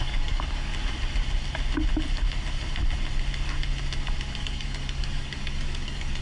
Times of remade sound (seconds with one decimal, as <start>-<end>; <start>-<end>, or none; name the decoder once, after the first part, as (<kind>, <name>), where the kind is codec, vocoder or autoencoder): 0.0-0.7 (codec, DAC); 4.4-6.2